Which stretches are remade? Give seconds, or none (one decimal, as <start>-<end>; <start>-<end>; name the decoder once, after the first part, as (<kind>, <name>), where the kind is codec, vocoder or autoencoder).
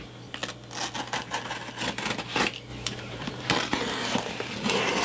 2.7-3.5 (vocoder, BigVGAN v2)